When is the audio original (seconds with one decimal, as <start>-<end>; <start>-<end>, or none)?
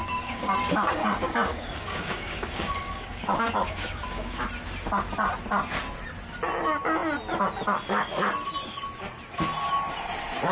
4.4-10.5